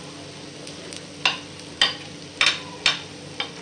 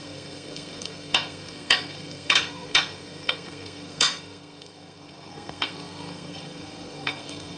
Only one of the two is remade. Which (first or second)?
second